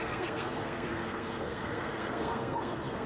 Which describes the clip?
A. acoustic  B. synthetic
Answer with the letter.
B